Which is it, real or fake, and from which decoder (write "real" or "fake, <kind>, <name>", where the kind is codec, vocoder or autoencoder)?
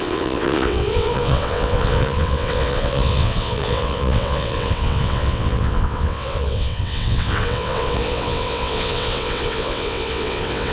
fake, vocoder, WaveNeXt